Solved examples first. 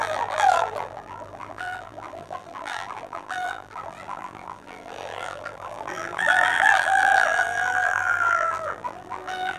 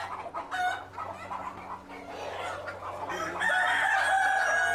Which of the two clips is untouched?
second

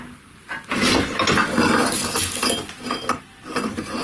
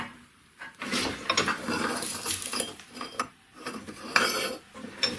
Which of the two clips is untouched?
first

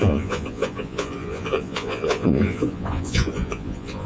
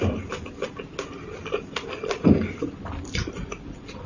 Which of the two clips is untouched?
second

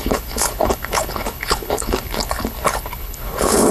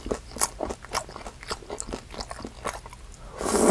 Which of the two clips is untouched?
second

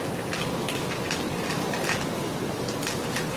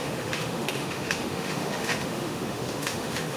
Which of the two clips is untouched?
first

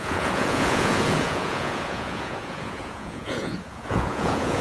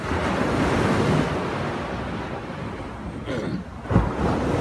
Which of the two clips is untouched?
second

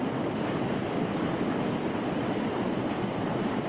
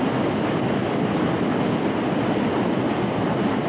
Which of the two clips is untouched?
second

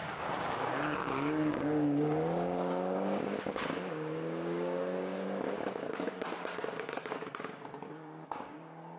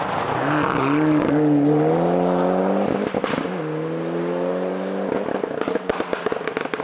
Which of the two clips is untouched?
second